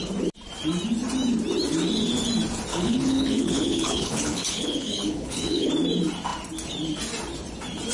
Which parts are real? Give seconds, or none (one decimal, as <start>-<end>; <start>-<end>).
0.0-2.7; 5.7-7.9